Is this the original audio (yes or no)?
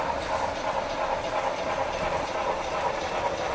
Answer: yes